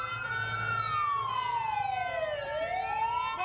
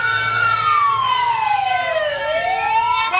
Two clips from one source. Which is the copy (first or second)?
second